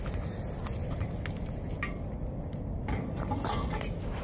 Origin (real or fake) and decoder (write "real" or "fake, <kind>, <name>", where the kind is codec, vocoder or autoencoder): real